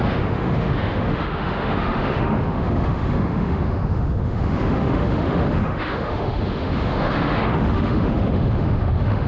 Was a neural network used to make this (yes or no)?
yes